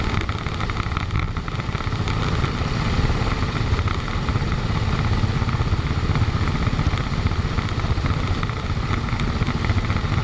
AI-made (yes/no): no